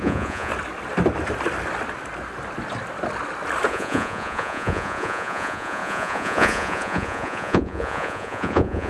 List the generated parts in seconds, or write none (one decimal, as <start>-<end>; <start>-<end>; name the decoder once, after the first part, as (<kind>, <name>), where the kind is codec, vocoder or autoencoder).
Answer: 0.0-0.5 (vocoder, Vocos); 3.7-8.9